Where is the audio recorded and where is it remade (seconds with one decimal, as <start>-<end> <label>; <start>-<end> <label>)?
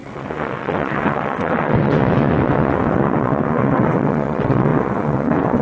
0.0-5.6 remade